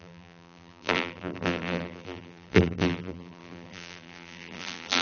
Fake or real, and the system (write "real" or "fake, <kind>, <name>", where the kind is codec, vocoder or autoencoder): fake, vocoder, BigVGAN v2